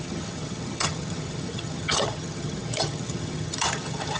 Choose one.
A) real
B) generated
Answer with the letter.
B